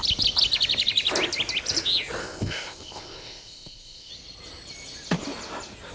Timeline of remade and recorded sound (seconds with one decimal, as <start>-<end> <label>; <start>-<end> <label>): 0.0-2.2 recorded; 2.2-4.1 remade; 4.1-5.9 recorded

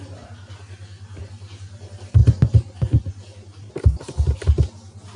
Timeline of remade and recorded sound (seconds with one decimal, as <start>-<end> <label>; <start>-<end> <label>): 0.0-5.2 recorded

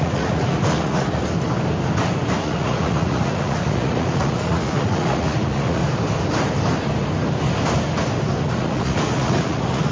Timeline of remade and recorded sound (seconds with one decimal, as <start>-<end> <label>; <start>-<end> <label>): 0.0-1.2 remade; 1.2-2.4 recorded; 2.4-5.8 remade; 5.8-8.4 recorded; 8.4-9.9 remade

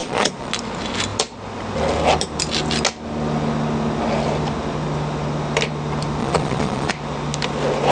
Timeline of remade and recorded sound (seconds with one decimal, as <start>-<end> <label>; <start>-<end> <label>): 0.0-0.5 remade; 0.5-6.2 recorded; 6.2-6.9 remade; 6.9-7.9 recorded

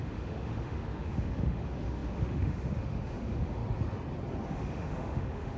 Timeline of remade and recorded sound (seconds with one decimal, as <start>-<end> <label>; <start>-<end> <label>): 0.0-3.6 remade; 3.6-4.5 recorded; 4.5-5.6 remade

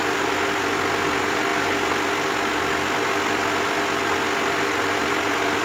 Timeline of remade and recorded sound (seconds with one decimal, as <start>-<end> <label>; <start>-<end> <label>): 0.0-5.6 recorded

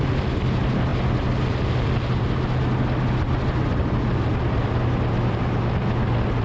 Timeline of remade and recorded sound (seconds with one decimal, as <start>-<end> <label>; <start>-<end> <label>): 0.0-6.4 recorded

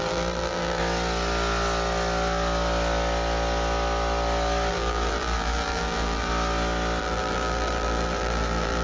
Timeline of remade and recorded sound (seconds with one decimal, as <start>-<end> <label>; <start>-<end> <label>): 0.0-0.8 remade; 0.8-4.7 recorded; 4.7-6.3 remade; 6.3-7.0 recorded; 7.0-8.8 remade